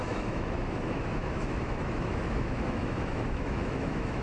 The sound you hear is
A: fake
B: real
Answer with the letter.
A